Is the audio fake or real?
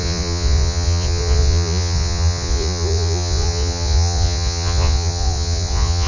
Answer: fake